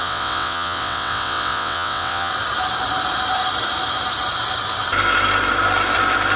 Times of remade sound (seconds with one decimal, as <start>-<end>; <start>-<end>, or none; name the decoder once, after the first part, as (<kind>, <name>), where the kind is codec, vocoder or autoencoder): 0.0-2.3 (vocoder, WaveNeXt)